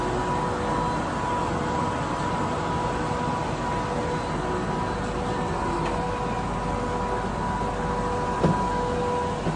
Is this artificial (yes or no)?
no